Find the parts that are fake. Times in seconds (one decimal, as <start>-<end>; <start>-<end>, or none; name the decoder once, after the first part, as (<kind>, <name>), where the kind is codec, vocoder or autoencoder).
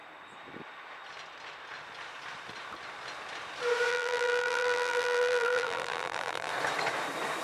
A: 3.9-6.5 (vocoder, BigVGAN v2)